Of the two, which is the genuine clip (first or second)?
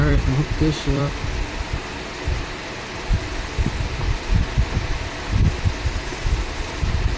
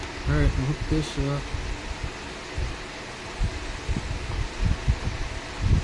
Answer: second